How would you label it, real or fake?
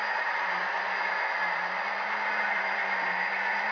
real